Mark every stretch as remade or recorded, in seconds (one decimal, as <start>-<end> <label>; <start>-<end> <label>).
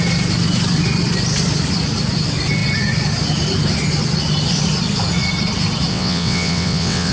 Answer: 0.0-5.9 recorded; 5.9-7.1 remade